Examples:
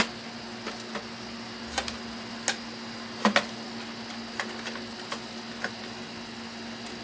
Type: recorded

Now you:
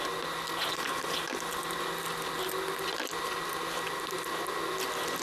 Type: recorded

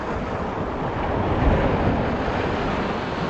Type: recorded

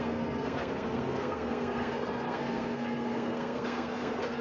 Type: remade